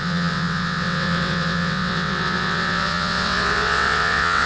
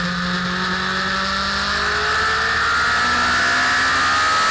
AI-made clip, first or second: first